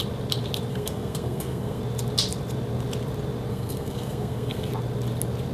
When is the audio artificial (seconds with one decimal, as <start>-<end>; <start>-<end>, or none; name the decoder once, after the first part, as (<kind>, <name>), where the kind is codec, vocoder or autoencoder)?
0.7-1.8 (codec, SNAC); 3.5-4.7

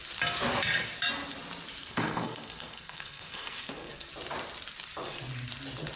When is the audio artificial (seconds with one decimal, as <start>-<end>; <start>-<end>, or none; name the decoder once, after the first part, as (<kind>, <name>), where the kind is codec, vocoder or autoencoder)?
1.8-4.1 (codec, SNAC)

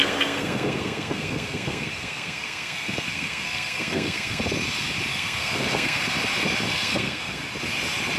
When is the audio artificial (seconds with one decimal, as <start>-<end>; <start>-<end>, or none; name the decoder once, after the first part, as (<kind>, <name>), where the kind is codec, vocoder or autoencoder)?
0.0-4.4 (codec, SNAC); 5.1-6.0; 6.7-7.4

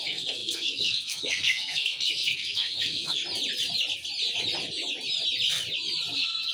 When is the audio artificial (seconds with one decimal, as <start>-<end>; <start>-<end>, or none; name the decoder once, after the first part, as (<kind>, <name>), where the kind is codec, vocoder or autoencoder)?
0.0-3.2 (codec, SNAC); 6.1-6.5

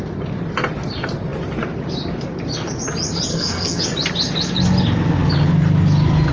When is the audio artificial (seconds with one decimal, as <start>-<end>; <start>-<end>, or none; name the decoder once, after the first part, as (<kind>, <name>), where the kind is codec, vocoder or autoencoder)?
3.3-3.8 (codec, SNAC)

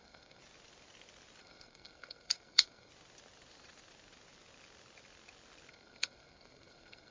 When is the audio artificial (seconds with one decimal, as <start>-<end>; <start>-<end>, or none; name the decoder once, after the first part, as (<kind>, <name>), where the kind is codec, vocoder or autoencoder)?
0.0-0.4 (codec, SNAC); 1.4-2.9; 5.7-7.1